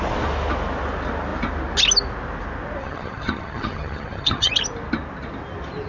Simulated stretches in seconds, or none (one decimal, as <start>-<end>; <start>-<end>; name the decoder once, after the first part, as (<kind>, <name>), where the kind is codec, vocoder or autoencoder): 2.8-4.5 (vocoder, HiFi-GAN)

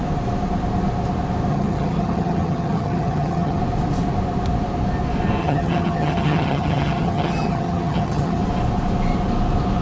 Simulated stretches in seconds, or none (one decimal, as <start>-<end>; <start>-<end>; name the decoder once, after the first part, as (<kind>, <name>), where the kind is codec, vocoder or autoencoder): 1.5-3.6 (vocoder, HiFi-GAN); 5.4-8.4

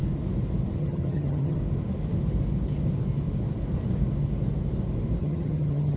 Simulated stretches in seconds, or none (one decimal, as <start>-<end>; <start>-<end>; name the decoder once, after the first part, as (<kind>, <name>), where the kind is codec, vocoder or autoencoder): 0.8-1.6 (vocoder, HiFi-GAN); 5.2-6.0

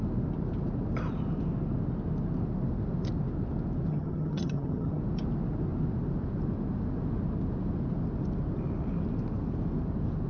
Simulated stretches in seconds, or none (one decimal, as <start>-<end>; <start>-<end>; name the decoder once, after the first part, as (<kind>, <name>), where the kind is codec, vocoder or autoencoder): 3.9-5.0 (vocoder, HiFi-GAN)

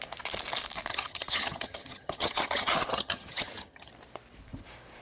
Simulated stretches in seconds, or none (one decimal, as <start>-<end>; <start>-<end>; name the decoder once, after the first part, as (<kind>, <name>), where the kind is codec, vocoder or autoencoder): 0.9-3.9 (vocoder, HiFi-GAN)

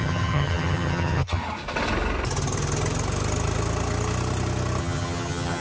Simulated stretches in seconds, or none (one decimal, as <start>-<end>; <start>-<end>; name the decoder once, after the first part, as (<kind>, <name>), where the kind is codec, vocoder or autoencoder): 0.0-1.4 (vocoder, HiFi-GAN); 4.8-5.6